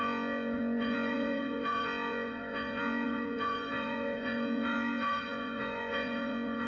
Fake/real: fake